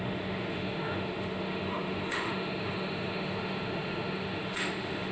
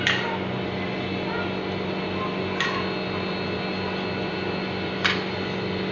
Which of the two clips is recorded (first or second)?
second